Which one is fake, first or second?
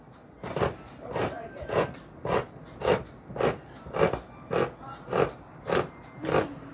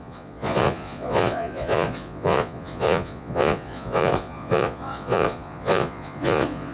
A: second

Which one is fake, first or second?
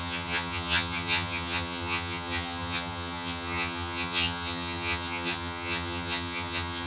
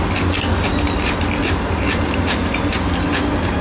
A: first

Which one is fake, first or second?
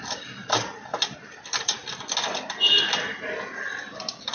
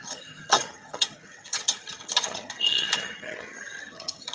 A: second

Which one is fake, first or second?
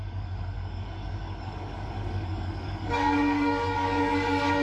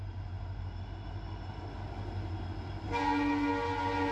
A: first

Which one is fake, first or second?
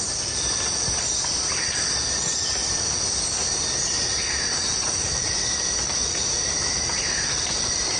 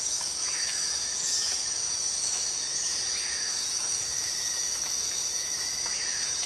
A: second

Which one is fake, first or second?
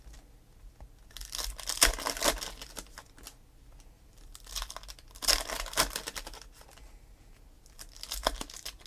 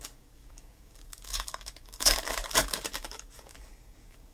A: second